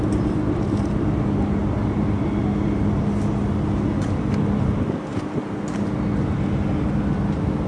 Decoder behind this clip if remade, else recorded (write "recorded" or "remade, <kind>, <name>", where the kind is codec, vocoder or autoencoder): recorded